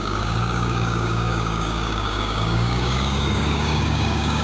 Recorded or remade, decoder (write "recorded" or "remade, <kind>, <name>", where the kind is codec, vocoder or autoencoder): remade, codec, DAC